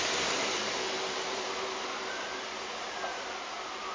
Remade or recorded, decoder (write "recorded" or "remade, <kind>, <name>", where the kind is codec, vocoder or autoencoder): recorded